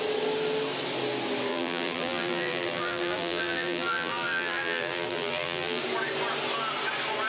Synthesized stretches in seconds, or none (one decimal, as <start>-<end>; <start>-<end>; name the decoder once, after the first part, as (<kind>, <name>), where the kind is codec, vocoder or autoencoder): 1.5-5.8 (vocoder, BigVGAN v2)